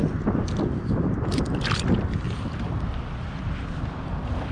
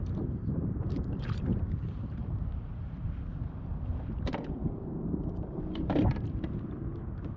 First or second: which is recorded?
first